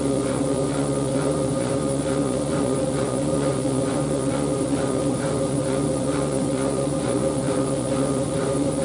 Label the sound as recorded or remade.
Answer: remade